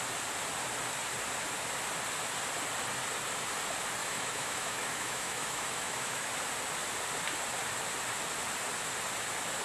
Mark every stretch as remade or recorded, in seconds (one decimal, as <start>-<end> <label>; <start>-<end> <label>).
0.0-4.0 recorded; 4.0-6.3 remade; 6.3-9.6 recorded

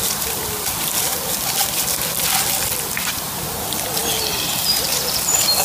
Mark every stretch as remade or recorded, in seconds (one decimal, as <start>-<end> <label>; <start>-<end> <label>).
0.0-5.6 recorded

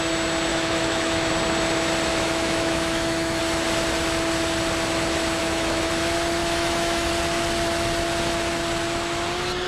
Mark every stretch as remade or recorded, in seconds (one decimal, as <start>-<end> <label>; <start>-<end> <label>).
0.0-0.5 recorded; 0.5-1.3 remade; 1.3-2.1 recorded; 2.1-3.4 remade; 3.4-5.4 recorded; 5.4-5.9 remade; 5.9-6.4 recorded; 6.4-7.1 remade; 7.1-9.7 recorded

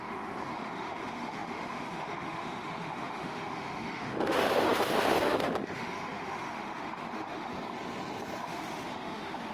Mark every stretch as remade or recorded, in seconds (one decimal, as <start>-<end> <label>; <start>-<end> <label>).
0.0-7.5 remade; 7.5-8.4 recorded; 8.4-9.5 remade

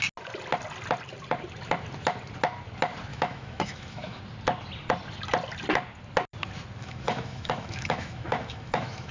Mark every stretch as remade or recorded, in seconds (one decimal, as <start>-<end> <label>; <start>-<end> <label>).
0.0-3.1 recorded; 3.1-4.2 remade; 4.2-6.8 recorded; 6.8-9.1 remade